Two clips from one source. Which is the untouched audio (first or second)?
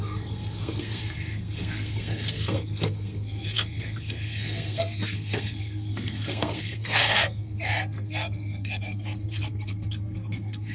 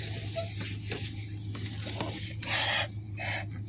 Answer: second